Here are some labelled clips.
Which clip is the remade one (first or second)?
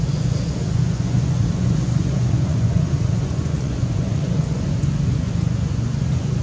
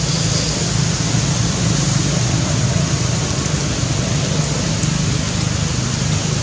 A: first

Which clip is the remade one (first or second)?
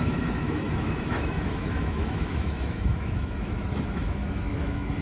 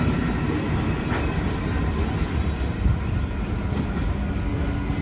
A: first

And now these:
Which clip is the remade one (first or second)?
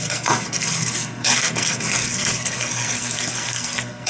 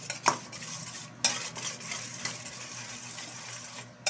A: first